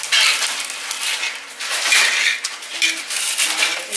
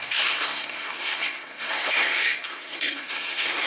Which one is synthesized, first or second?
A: second